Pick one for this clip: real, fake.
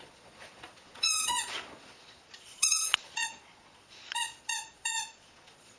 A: fake